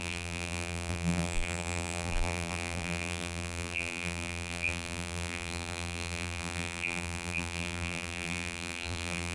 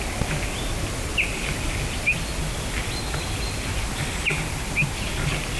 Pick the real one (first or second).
second